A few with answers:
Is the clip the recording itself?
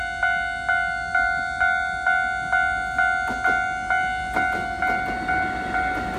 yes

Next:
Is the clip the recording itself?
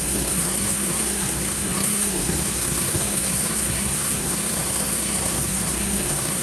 no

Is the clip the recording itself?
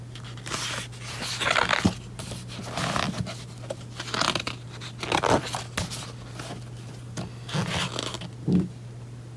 yes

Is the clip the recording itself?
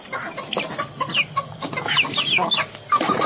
yes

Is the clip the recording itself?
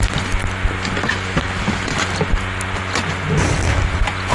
yes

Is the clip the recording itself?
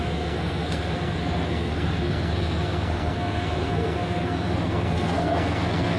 no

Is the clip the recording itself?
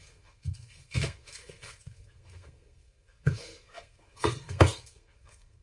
no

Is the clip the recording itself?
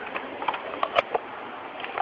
yes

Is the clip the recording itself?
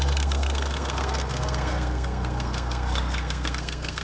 no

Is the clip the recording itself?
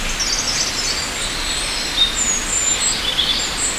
yes